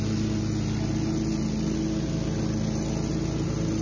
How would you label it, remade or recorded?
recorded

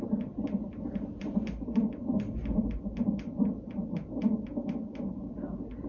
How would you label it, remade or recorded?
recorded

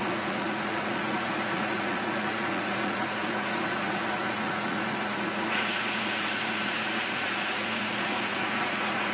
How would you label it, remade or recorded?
remade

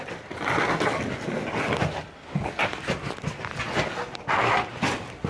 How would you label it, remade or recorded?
recorded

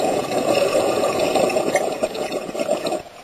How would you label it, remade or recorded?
remade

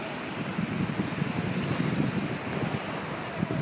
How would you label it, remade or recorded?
recorded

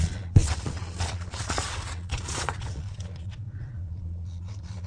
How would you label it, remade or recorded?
remade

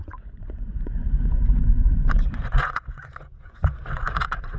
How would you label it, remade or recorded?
remade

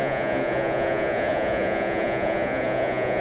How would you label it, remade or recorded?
remade